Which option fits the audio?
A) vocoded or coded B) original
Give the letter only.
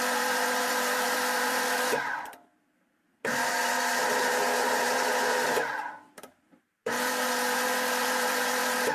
A